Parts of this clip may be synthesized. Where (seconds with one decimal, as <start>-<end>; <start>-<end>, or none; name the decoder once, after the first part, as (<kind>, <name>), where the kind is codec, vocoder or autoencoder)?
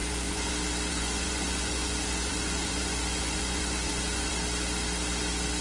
0.0-0.5 (vocoder, Vocos); 0.9-4.3